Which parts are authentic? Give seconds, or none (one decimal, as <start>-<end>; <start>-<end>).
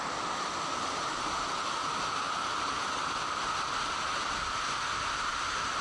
0.0-5.8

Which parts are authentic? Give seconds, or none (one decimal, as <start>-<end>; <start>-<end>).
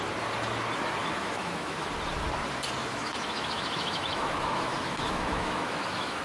0.0-1.0; 1.8-2.8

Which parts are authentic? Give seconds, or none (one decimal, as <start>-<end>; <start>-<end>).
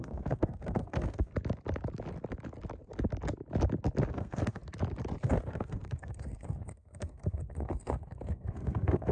1.3-4.1; 4.6-5.2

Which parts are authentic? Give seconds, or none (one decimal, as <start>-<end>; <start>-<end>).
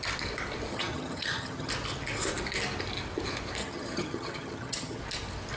0.0-0.7; 1.7-3.6; 5.0-5.6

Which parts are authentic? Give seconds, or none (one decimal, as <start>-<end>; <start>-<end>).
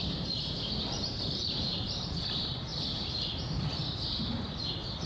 0.0-5.1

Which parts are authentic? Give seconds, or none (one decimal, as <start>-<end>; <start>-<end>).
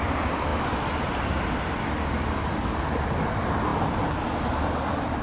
0.0-5.2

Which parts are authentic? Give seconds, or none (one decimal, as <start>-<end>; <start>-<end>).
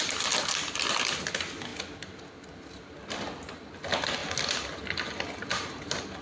0.0-6.2